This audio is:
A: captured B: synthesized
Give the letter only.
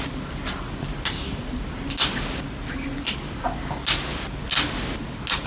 A